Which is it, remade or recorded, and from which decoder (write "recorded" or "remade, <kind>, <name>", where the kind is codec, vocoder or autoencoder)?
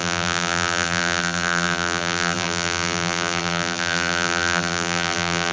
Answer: remade, vocoder, BigVGAN v2